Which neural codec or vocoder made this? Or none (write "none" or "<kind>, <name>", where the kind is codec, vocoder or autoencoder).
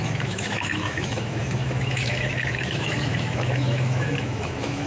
autoencoder, DAC-VAE